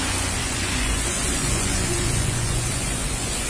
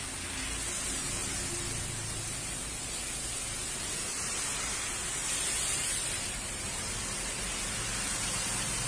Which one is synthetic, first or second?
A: first